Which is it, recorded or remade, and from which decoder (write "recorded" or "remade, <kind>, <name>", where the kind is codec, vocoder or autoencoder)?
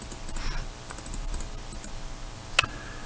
recorded